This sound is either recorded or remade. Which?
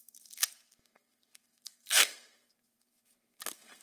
remade